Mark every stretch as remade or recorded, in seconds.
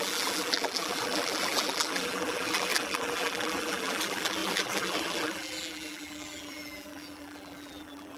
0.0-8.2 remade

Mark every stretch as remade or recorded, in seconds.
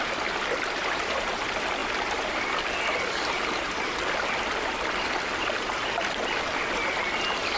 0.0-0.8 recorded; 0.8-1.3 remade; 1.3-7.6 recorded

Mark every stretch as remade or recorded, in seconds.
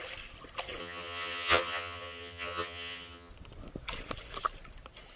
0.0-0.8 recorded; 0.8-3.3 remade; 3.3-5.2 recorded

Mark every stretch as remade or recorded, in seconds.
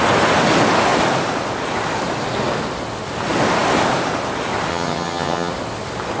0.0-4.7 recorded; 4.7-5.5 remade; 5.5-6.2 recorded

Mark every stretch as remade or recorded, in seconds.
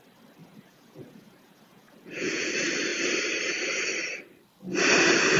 0.0-0.4 recorded; 0.4-2.5 remade; 2.5-5.4 recorded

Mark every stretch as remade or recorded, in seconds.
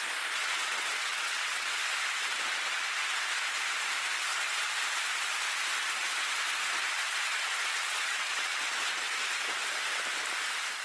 0.0-0.4 recorded; 0.4-1.8 remade; 1.8-7.7 recorded; 7.7-9.1 remade; 9.1-10.8 recorded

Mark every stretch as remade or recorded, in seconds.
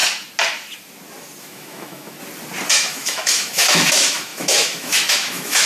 0.0-1.4 recorded; 1.4-2.2 remade; 2.2-2.7 recorded; 2.7-5.7 remade